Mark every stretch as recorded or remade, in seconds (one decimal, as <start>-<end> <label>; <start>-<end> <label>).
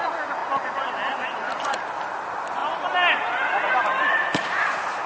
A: 0.0-4.1 recorded; 4.1-4.6 remade; 4.6-5.1 recorded